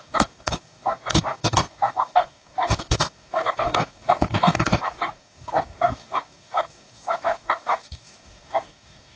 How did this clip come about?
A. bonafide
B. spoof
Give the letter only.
B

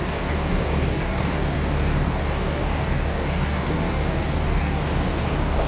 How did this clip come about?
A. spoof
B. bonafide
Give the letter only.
A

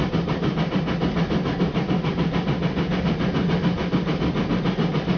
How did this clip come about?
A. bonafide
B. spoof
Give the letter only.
A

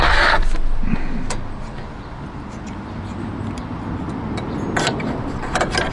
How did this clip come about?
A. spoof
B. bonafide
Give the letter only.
B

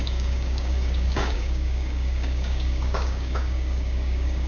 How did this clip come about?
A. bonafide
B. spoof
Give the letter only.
B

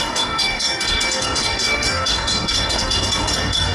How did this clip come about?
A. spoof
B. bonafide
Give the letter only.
A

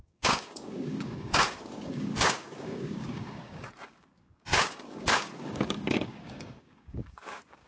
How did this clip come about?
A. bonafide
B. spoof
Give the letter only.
B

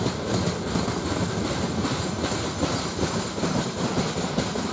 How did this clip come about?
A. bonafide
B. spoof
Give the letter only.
A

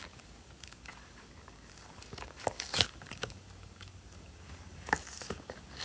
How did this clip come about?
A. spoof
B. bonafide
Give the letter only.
A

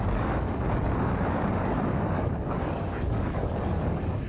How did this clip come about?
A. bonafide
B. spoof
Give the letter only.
B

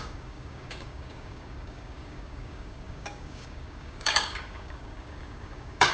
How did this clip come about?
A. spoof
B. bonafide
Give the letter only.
A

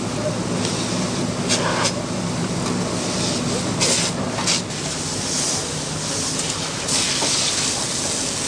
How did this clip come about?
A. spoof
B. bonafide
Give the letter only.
B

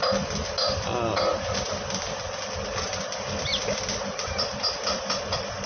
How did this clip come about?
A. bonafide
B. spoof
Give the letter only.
A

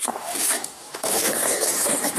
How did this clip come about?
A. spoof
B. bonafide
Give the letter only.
A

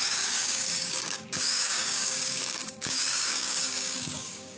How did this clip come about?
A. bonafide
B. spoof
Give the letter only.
B